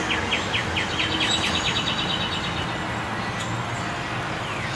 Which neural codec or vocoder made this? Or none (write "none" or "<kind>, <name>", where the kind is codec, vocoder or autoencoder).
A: none